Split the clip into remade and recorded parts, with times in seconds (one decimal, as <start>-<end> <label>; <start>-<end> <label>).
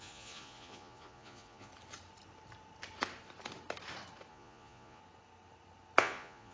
0.0-1.7 remade; 1.7-4.3 recorded; 4.3-5.0 remade; 5.0-6.0 recorded; 6.0-6.5 remade